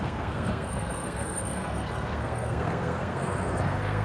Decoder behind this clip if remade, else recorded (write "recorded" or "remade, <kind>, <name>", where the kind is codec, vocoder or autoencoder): remade, codec, SNAC